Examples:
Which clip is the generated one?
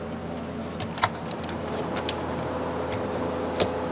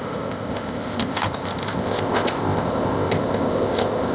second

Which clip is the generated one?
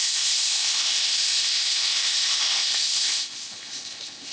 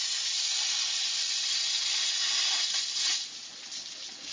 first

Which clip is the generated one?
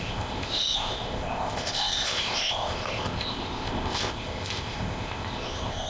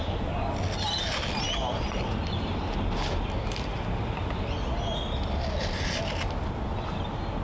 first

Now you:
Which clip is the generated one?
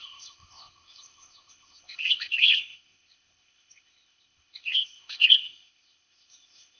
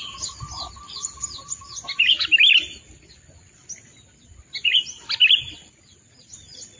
first